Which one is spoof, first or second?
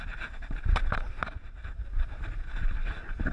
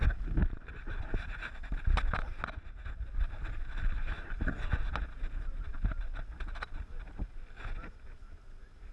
first